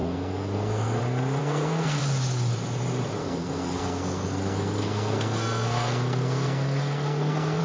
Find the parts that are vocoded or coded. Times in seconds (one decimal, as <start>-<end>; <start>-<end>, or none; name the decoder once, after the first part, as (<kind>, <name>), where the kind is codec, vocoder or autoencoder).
0.0-1.0 (codec, SNAC); 1.4-2.0; 3.2-7.6